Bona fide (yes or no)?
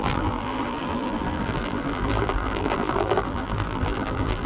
no